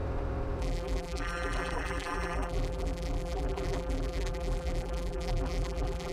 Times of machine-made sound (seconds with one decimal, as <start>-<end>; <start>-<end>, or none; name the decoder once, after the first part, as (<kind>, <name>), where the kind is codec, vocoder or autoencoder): 0.6-6.1 (vocoder, BigVGAN v2)